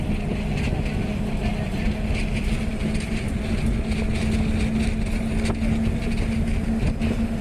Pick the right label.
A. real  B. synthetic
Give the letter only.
A